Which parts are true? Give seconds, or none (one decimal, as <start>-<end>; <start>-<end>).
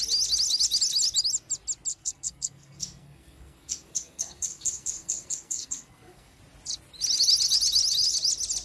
0.0-1.9; 6.4-8.6